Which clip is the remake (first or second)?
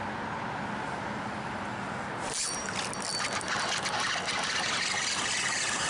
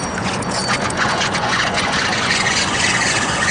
second